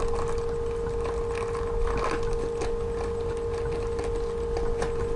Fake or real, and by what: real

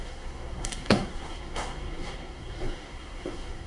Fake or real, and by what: fake, codec, SNAC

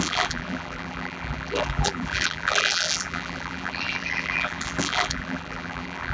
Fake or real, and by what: fake, vocoder, BigVGAN v2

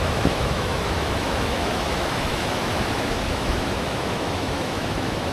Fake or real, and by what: fake, autoencoder, DAC-VAE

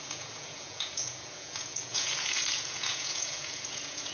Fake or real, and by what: fake, vocoder, Vocos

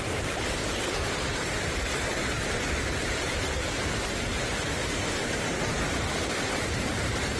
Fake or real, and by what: fake, vocoder, BigVGAN v2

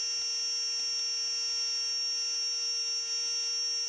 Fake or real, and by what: real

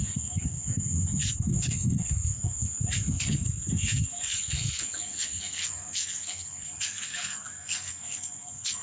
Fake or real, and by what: fake, codec, SNAC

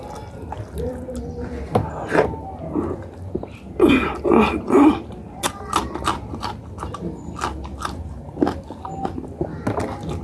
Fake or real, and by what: real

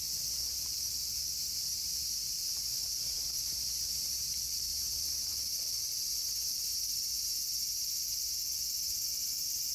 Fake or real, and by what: fake, vocoder, BigVGAN v2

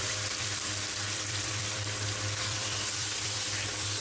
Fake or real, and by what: fake, vocoder, BigVGAN v2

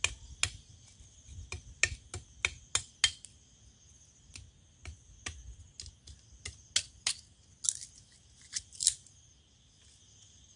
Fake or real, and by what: real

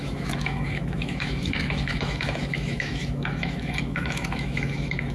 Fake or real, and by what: fake, autoencoder, DAC-VAE